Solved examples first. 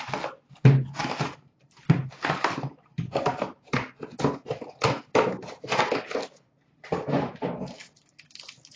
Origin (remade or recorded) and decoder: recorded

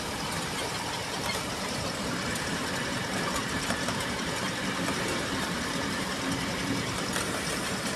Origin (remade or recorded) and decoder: remade, vocoder, BigVGAN v2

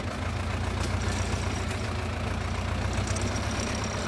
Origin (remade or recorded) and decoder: recorded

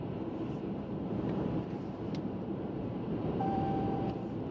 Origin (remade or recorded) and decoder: remade, vocoder, BigVGAN v2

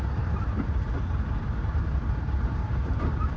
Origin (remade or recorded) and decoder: recorded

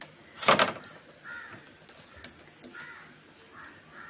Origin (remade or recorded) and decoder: recorded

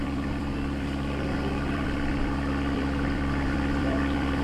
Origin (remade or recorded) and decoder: remade, vocoder, BigVGAN v2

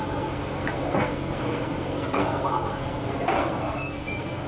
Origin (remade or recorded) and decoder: remade, codec, SNAC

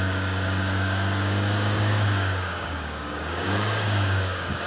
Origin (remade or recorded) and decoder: remade, codec, DAC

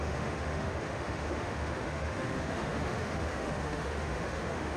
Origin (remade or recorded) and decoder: remade, autoencoder, DAC-VAE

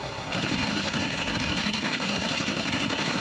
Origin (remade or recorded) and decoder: remade, codec, SNAC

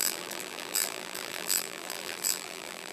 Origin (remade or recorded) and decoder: remade, vocoder, BigVGAN v2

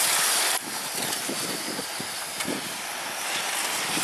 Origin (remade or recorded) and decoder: recorded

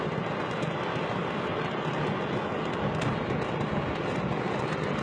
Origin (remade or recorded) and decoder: recorded